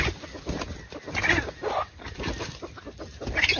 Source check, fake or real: real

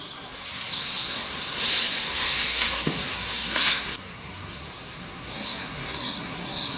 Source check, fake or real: fake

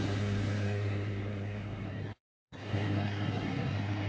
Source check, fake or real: fake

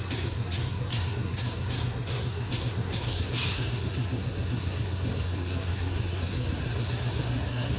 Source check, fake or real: fake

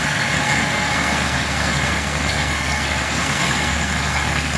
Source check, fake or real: fake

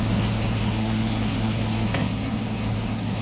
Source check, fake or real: fake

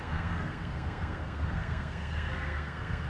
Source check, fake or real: fake